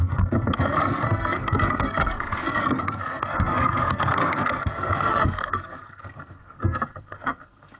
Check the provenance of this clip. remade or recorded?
remade